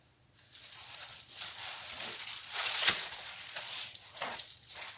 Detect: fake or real fake